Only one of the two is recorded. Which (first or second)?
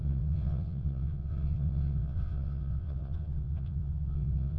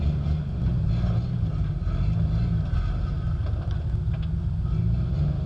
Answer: second